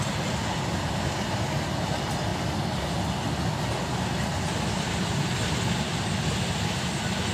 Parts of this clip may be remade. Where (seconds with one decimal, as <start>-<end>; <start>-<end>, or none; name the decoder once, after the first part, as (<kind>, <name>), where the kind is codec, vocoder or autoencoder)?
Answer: none